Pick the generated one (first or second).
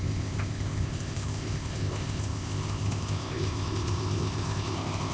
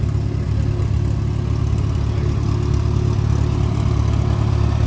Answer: first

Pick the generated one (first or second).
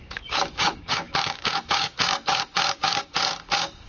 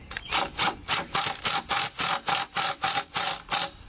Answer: first